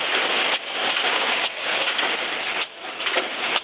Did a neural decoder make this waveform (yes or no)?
yes